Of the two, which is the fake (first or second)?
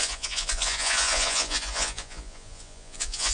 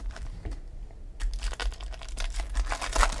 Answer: first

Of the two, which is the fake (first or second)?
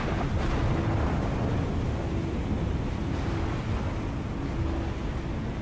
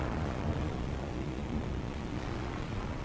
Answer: second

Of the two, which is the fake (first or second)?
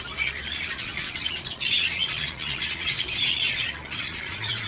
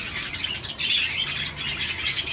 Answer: first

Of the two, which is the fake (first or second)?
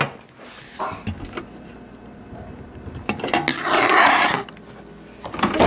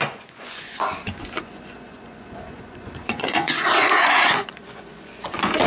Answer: second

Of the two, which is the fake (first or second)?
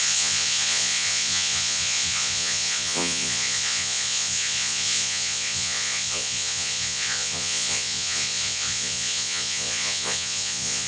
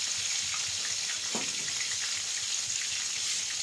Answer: first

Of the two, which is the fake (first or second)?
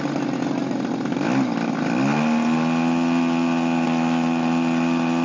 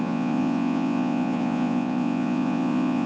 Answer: second